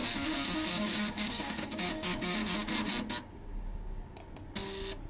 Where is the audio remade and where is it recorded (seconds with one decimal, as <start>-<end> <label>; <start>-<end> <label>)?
0.0-0.7 recorded; 0.7-2.4 remade; 2.4-3.3 recorded; 3.3-4.2 remade; 4.2-5.1 recorded